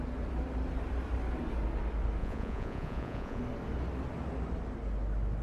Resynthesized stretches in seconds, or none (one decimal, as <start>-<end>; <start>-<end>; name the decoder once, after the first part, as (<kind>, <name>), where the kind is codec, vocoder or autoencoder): 2.2-3.4 (vocoder, Vocos)